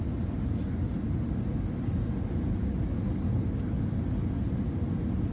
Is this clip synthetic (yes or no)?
no